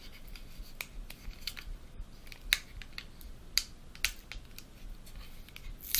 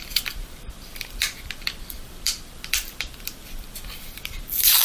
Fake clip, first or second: second